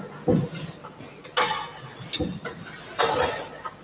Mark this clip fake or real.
real